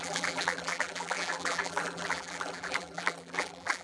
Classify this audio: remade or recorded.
remade